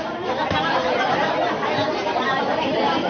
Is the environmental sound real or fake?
fake